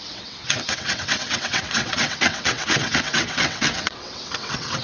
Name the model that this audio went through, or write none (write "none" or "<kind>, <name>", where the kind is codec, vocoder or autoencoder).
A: vocoder, WaveNeXt